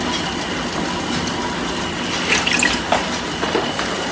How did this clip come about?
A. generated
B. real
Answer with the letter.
B